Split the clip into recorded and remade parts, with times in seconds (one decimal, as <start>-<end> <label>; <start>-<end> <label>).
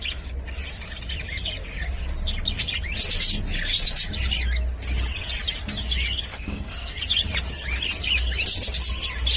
0.0-6.3 recorded; 6.3-7.0 remade; 7.0-9.4 recorded